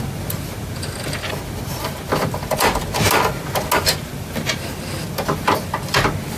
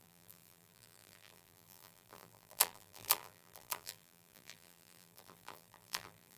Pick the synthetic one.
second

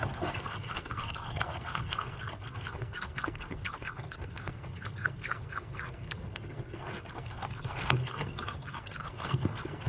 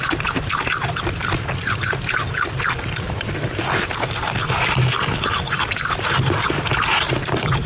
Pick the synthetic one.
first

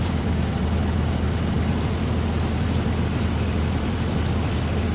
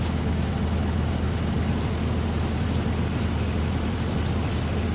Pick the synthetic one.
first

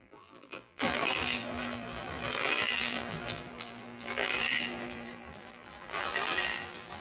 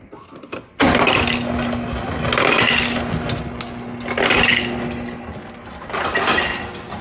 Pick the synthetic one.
first